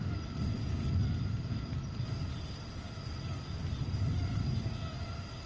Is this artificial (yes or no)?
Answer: no